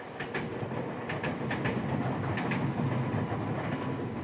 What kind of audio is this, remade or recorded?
recorded